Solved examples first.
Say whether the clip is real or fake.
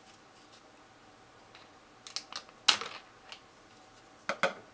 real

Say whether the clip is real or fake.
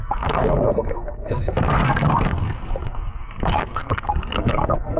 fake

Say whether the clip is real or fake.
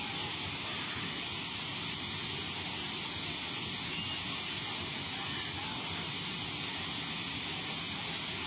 real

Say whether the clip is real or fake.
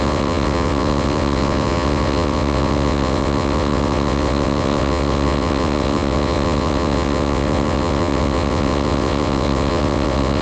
fake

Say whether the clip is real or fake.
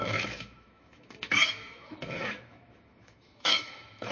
fake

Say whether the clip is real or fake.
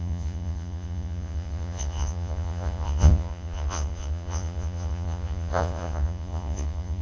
fake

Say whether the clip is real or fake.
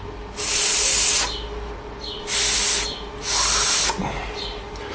real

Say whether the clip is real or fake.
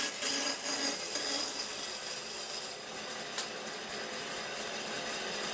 real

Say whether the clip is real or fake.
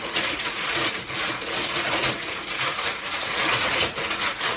fake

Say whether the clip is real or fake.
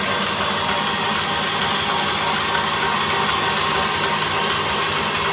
real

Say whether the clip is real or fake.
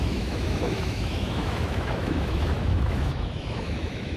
fake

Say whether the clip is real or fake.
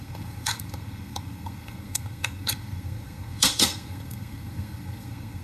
fake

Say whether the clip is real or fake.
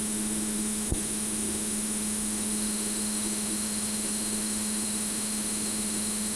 fake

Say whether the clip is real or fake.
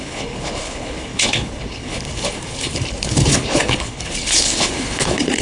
fake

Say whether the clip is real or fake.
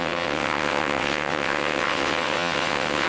fake